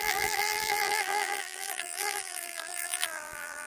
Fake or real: fake